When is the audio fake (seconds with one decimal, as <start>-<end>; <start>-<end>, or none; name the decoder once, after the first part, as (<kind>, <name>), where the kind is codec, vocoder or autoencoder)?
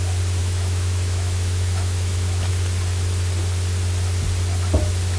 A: 0.4-2.5 (autoencoder, DAC-VAE)